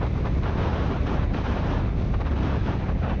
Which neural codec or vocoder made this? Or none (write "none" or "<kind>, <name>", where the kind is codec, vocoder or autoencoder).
vocoder, BigVGAN v2